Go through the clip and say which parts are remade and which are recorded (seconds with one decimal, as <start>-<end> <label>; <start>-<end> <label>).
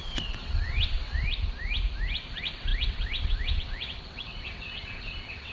0.0-1.1 remade; 1.1-2.3 recorded; 2.3-5.5 remade